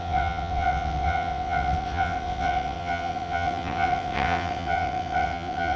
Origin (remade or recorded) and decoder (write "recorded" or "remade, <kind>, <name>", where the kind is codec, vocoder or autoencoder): remade, vocoder, WaveNeXt